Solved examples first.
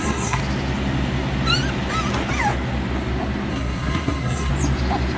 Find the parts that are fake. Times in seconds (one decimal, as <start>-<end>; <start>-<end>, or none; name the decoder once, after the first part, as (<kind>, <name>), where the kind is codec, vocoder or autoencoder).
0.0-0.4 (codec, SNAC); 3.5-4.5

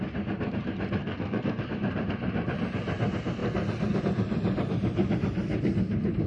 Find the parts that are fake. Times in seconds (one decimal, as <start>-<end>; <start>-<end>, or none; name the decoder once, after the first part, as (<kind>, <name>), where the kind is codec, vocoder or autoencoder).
1.0-1.6 (codec, SNAC)

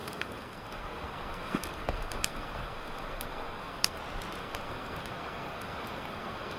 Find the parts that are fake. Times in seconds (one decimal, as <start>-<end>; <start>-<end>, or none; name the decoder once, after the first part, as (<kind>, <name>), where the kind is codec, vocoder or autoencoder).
0.0-4.0 (codec, SNAC); 4.4-6.6

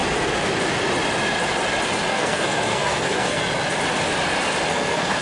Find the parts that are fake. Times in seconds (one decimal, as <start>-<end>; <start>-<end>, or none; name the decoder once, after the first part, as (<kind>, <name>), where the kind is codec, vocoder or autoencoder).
2.1-3.4 (codec, SNAC); 4.7-5.2